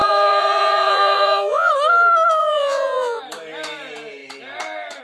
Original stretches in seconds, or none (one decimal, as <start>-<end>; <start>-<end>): 1.7-2.4; 3.2-5.0

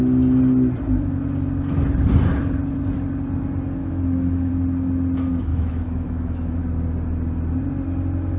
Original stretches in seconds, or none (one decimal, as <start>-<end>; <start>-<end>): 0.0-3.8; 4.5-5.5; 6.6-8.4

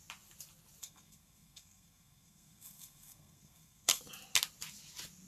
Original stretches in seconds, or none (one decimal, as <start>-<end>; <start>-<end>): 0.0-0.8; 4.0-5.3